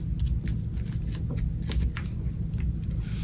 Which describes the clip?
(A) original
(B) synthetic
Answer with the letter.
A